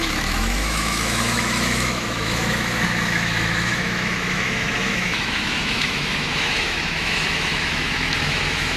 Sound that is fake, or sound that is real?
fake